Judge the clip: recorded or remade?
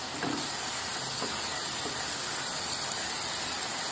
recorded